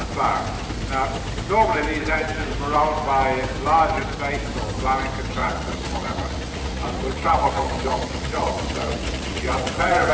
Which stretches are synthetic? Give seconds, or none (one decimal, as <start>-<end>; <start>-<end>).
5.4-10.1